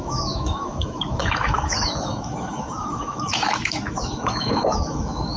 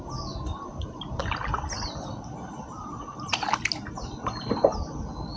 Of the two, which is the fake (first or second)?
first